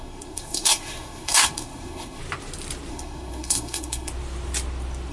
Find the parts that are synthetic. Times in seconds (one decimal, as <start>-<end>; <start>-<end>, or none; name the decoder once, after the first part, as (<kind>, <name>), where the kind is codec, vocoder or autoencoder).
0.0-2.2 (codec, SNAC); 2.9-4.1